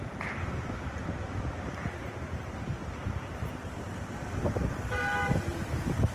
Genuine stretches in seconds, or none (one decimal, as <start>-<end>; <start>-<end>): none